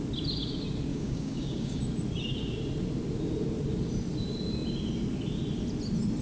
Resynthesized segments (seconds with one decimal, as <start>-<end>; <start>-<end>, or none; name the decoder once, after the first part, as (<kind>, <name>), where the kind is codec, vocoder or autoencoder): 0.9-1.8 (codec, DAC)